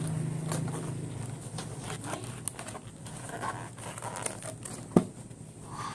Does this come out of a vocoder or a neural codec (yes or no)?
no